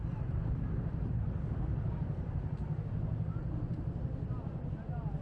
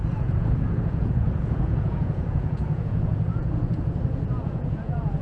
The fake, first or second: second